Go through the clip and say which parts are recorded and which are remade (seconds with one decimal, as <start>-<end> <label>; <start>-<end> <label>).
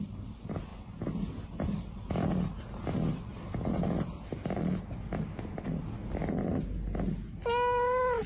0.0-8.3 recorded